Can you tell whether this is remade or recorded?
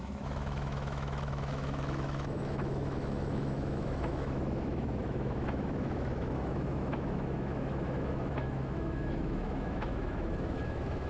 remade